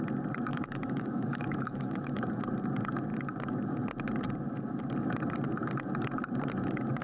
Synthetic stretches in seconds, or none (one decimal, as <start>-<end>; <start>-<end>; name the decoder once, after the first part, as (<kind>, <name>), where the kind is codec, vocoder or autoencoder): 0.5-2.3 (autoencoder, DAC-VAE)